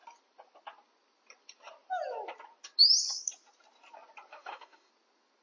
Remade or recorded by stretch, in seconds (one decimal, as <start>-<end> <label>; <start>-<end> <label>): 0.0-4.3 recorded; 4.3-4.9 remade; 4.9-5.4 recorded